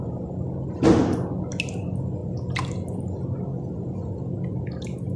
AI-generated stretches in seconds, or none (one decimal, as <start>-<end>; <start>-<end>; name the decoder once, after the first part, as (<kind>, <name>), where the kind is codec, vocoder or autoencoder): none